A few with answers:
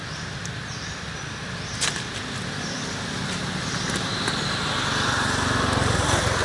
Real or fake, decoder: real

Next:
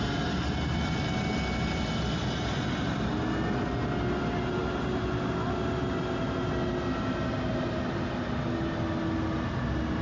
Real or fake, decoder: real